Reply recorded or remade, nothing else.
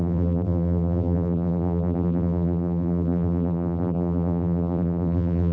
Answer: remade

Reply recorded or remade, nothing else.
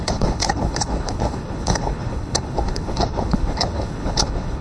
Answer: remade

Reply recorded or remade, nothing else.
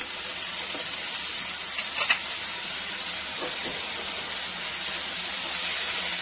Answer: recorded